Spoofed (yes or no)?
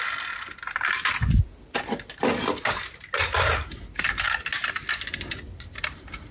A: no